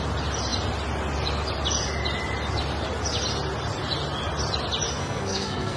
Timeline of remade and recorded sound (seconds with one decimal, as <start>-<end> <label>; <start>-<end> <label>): 0.0-5.0 recorded; 5.0-5.8 remade